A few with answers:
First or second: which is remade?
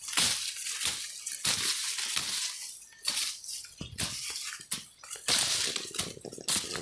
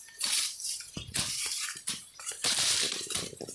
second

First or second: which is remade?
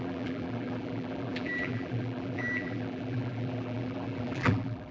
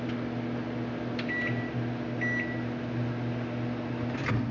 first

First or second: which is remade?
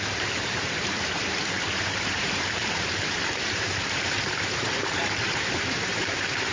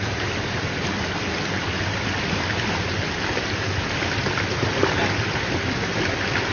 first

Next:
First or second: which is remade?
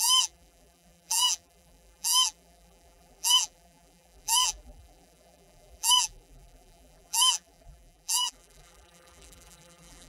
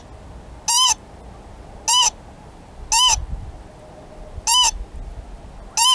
first